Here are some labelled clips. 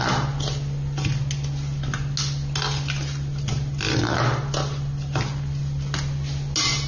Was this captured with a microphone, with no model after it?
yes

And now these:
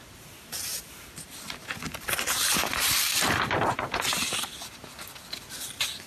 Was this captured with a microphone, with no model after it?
yes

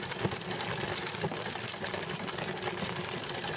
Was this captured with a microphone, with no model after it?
yes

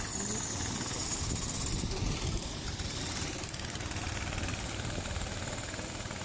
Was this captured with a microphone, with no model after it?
no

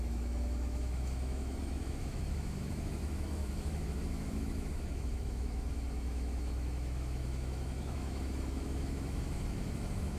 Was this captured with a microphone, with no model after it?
no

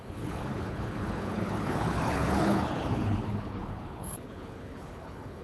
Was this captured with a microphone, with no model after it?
no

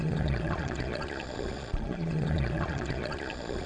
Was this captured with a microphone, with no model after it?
no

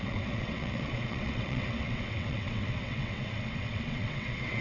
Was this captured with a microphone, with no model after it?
no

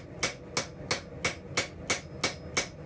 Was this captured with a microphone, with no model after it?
yes